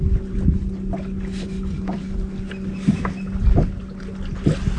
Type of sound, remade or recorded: recorded